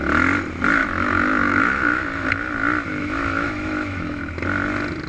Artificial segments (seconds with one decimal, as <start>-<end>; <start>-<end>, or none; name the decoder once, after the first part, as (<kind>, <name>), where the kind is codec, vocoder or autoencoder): 0.8-2.3 (autoencoder, DAC-VAE); 2.9-4.2